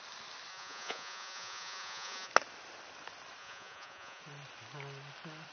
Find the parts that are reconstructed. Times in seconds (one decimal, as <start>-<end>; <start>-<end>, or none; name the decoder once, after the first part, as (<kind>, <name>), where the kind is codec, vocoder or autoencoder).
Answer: 0.5-2.3 (vocoder, Vocos); 3.4-4.2